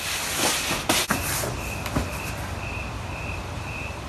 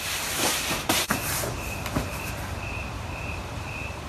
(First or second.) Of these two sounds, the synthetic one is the second